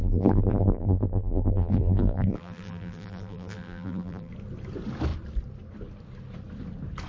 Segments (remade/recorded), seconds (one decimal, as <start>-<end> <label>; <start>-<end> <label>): 0.0-4.3 remade; 4.3-7.1 recorded